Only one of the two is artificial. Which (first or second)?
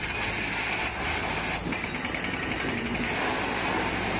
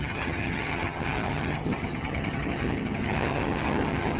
second